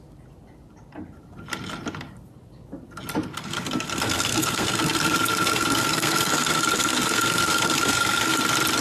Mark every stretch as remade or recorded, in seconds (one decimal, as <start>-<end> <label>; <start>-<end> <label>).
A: 0.0-3.3 recorded; 3.3-8.4 remade; 8.4-8.8 recorded